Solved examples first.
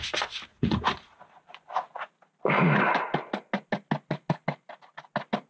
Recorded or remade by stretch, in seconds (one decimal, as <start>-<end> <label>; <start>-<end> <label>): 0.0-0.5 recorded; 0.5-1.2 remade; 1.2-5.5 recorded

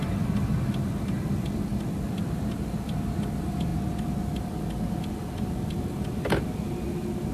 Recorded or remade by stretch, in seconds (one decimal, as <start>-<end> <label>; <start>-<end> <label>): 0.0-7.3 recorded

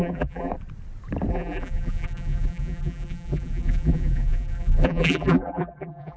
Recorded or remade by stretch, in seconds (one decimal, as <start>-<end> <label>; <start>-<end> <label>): 0.0-0.5 remade; 0.5-1.3 recorded; 1.3-6.2 remade

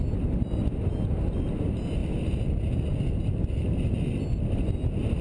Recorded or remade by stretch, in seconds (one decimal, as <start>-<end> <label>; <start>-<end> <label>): 0.0-5.2 recorded